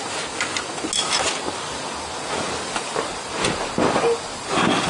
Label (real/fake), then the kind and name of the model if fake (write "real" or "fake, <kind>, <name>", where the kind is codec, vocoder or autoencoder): real